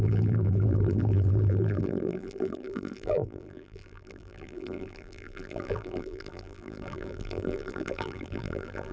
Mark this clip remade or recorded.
remade